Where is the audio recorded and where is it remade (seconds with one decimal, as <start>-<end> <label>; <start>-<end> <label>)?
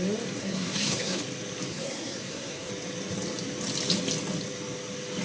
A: 0.0-0.4 recorded; 0.4-1.2 remade; 1.2-1.7 recorded; 1.7-2.7 remade; 2.7-5.2 recorded